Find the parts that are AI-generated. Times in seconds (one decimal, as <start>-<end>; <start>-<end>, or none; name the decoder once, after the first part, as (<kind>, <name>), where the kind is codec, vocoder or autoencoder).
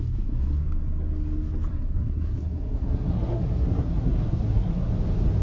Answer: 1.7-4.9 (codec, SNAC)